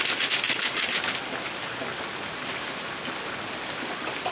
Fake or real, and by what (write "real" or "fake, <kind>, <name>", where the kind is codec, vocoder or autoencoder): real